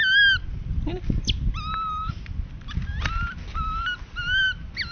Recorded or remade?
recorded